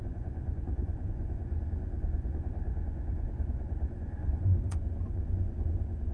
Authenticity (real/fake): fake